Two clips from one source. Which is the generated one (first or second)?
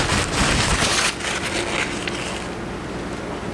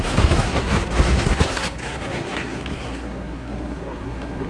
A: second